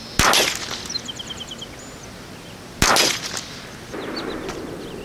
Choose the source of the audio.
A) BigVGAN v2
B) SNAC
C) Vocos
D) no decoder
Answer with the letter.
D